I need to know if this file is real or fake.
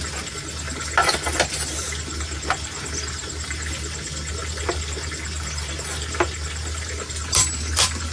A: real